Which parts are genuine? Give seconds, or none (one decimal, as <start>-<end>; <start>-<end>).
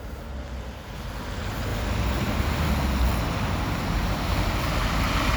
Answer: 0.0-5.4